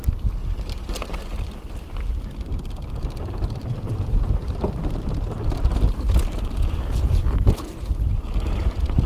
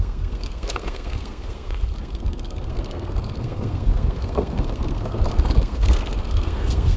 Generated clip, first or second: second